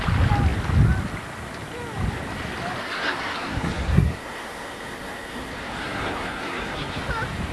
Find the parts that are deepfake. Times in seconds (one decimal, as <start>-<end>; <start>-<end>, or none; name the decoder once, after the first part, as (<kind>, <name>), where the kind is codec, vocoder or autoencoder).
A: 2.8-7.0 (codec, SNAC)